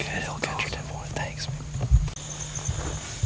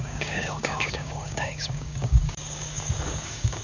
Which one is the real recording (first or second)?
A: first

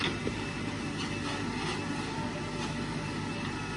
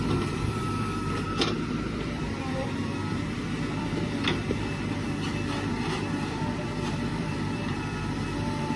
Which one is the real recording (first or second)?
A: first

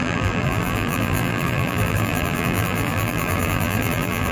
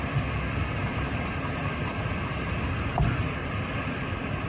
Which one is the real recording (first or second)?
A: second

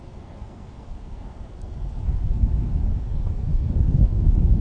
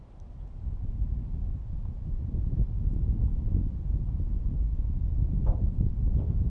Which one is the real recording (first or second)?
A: second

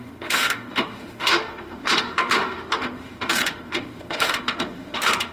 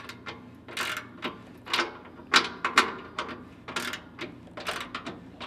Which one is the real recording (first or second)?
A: second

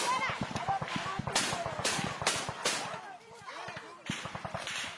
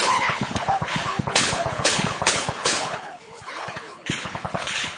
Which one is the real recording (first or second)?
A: first